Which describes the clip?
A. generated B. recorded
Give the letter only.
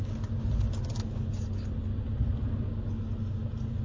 B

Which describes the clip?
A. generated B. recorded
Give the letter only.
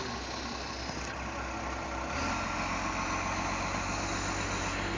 B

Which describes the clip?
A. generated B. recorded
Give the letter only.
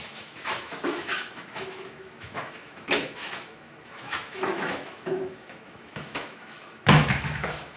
A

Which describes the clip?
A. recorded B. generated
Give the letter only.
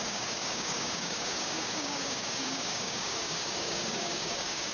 B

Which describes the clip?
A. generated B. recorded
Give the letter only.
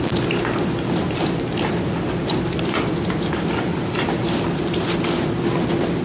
B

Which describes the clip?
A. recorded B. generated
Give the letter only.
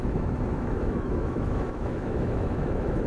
B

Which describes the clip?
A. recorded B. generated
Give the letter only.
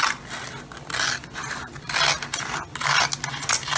A